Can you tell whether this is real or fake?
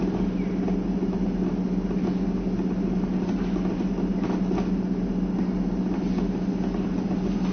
real